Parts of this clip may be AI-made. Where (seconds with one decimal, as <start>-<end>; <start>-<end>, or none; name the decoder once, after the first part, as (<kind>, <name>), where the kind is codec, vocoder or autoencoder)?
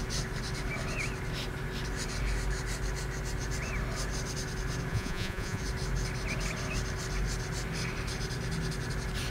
4.9-5.6 (vocoder, Vocos)